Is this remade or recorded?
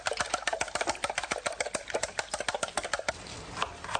recorded